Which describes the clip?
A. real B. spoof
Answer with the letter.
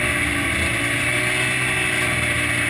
A